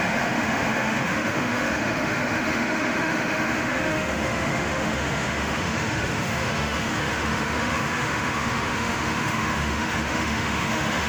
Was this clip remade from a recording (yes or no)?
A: yes